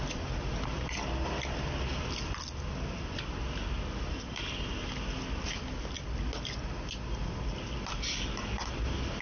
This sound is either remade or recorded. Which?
recorded